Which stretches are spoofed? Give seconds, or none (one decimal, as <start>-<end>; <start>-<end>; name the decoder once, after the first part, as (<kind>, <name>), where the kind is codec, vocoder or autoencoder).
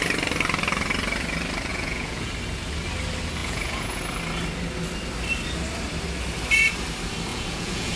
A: 1.7-2.3 (vocoder, Vocos); 3.4-4.0; 7.3-8.0